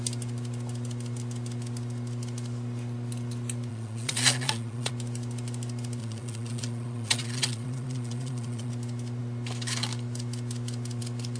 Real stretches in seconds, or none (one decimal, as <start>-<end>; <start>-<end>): 0.0-3.7; 4.9-6.0; 8.7-11.4